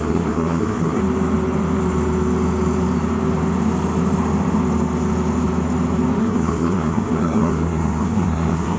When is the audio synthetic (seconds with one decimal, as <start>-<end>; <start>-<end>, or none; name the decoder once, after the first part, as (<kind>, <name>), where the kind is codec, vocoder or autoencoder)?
0.0-1.0 (codec, SNAC); 6.2-8.8